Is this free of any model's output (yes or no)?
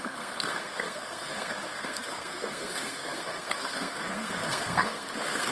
no